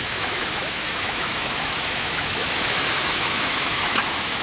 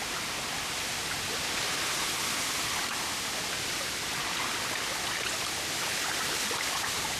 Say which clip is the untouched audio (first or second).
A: second